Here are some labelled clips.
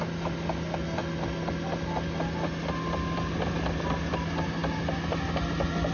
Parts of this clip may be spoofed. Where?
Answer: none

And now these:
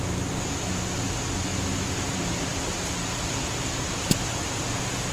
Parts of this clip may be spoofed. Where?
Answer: none